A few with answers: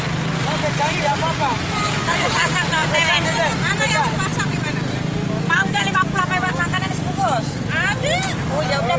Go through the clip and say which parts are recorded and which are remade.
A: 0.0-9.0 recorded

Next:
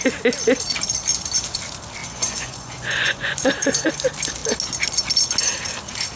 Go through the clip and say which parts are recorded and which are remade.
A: 0.0-2.0 recorded; 2.0-3.9 remade; 3.9-6.2 recorded

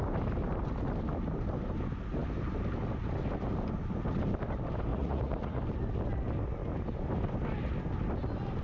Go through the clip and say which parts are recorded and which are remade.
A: 0.0-4.9 recorded; 4.9-5.6 remade; 5.6-8.6 recorded